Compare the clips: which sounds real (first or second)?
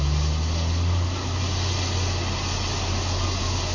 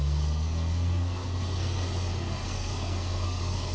first